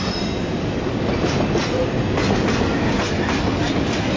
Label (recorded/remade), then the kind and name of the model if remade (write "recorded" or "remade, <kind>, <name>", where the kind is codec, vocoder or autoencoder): recorded